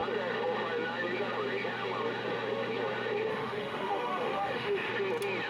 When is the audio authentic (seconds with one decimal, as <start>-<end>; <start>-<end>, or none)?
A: 0.0-3.3; 4.9-5.5